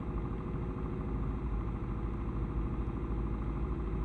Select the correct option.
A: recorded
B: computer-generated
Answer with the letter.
A